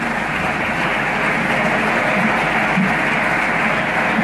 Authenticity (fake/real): real